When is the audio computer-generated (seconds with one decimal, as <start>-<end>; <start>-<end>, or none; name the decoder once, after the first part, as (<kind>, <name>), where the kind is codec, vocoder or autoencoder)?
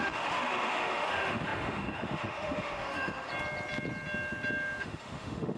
0.0-3.3 (autoencoder, DAC-VAE); 4.8-5.6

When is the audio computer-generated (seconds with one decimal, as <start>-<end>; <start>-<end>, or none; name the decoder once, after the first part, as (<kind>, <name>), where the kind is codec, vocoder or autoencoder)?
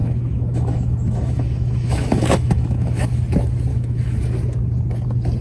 0.0-3.2 (autoencoder, DAC-VAE); 3.7-4.2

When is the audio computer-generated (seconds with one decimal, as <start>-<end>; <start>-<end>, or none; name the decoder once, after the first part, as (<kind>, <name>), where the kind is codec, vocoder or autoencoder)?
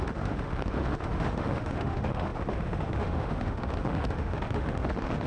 0.0-5.3 (autoencoder, DAC-VAE)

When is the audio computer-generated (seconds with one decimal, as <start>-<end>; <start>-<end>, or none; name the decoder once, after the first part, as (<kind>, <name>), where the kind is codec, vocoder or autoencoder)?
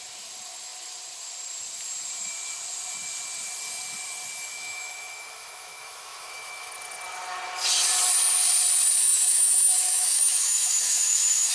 4.5-6.7 (autoencoder, DAC-VAE); 9.0-11.5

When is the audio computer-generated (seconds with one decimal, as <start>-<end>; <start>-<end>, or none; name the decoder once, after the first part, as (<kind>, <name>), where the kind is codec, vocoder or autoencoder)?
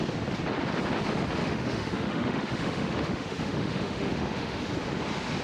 1.4-4.6 (autoencoder, DAC-VAE)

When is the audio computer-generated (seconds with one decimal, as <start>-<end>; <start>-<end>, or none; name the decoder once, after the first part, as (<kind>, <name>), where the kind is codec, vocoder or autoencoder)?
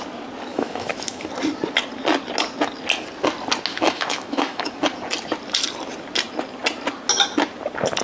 0.5-1.3 (autoencoder, DAC-VAE); 3.7-4.7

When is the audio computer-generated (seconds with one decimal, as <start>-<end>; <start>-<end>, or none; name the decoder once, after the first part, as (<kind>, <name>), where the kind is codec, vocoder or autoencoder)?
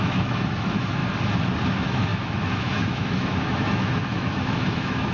0.0-1.0 (autoencoder, DAC-VAE); 1.7-5.1